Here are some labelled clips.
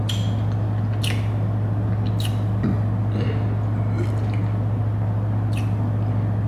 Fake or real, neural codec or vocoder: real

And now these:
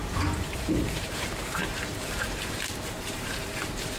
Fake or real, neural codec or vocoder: fake, vocoder, BigVGAN v2